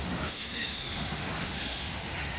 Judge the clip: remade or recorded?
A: remade